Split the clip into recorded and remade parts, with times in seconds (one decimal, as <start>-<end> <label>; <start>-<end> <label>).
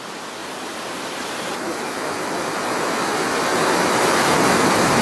0.0-0.4 recorded; 0.4-2.8 remade; 2.8-3.5 recorded; 3.5-5.0 remade